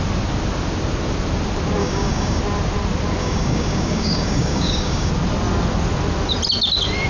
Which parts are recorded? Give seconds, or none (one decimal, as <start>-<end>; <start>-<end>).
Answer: 0.0-1.8; 2.4-3.2; 5.1-7.1